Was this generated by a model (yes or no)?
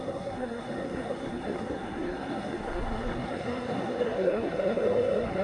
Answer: yes